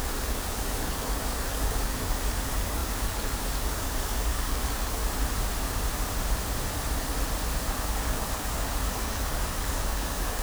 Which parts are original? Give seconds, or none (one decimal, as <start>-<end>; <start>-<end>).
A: 5.0-7.8